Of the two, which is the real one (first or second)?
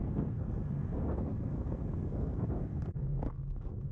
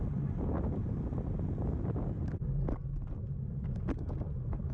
second